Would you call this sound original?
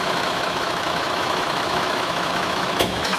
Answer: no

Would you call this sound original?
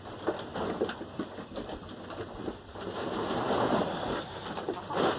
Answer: yes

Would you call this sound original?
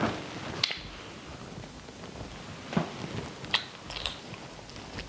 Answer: yes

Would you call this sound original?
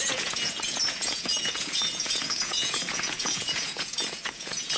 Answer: no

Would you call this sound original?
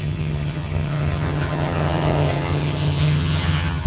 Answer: no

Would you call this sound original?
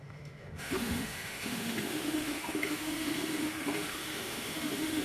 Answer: no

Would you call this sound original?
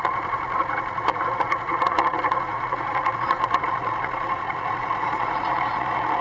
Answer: no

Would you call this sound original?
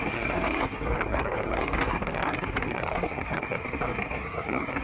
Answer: no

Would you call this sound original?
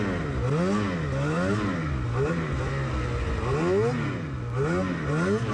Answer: yes